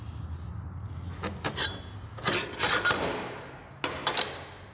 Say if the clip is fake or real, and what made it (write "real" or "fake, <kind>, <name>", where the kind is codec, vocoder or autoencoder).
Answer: real